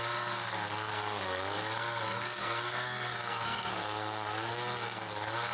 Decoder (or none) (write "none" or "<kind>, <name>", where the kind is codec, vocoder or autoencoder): codec, SNAC